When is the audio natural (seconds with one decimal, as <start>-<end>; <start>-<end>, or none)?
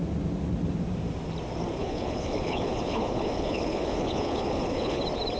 0.0-1.8; 5.0-5.4